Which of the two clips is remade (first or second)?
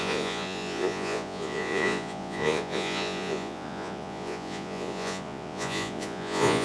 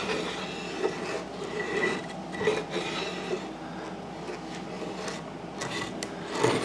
first